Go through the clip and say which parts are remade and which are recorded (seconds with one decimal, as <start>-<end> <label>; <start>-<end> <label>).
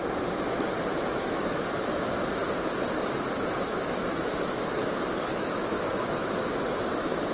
0.0-0.9 recorded; 0.9-1.6 remade; 1.6-3.7 recorded; 3.7-4.8 remade; 4.8-5.3 recorded; 5.3-6.3 remade; 6.3-7.3 recorded